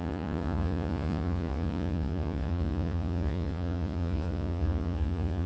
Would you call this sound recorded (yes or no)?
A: no